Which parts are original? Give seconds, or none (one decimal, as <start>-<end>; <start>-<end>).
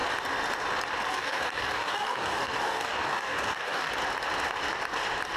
0.0-1.1; 3.9-5.4